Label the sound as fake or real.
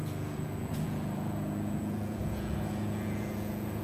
fake